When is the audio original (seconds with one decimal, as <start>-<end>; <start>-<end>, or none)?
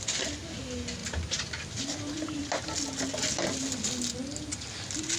0.0-5.2